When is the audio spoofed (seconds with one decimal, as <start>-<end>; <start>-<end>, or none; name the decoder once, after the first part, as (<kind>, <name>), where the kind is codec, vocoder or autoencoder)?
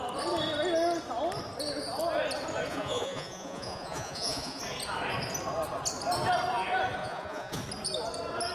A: 2.7-4.6 (vocoder, Vocos); 7.0-7.6